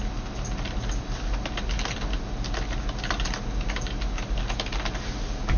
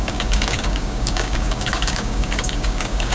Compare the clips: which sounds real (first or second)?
first